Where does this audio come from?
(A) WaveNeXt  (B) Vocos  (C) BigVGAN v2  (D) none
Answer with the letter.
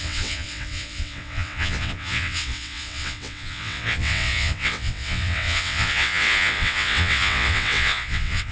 A